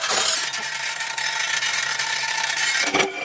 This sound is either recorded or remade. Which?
recorded